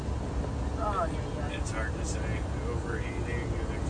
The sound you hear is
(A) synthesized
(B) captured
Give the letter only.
B